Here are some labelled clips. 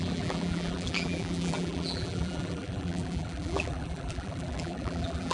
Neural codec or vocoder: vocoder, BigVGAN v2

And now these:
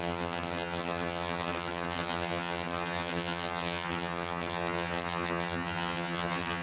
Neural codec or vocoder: vocoder, HiFi-GAN